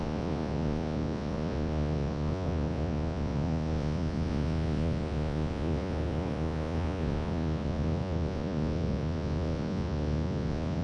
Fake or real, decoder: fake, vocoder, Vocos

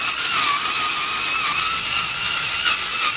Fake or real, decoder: real